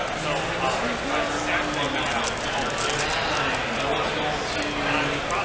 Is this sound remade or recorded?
recorded